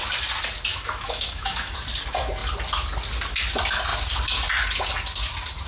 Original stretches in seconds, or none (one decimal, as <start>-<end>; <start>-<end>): 0.0-0.7; 1.7-5.7